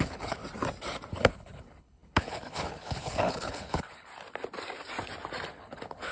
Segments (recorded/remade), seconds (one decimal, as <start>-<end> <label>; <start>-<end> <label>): 0.0-0.4 remade; 0.4-1.1 recorded; 1.1-4.1 remade; 4.1-5.5 recorded; 5.5-6.1 remade